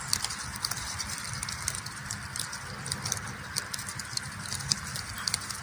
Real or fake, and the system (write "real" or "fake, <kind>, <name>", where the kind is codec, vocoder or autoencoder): real